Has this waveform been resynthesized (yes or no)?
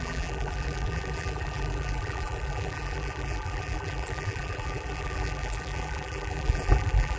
yes